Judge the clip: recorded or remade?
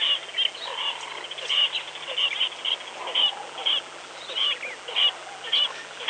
recorded